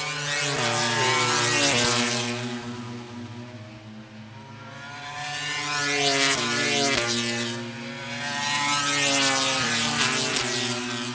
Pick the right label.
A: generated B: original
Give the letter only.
B